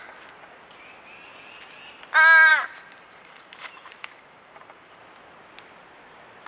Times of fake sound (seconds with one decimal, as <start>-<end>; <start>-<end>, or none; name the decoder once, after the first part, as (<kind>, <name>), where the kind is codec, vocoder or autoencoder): 2.5-5.0 (vocoder, BigVGAN v2)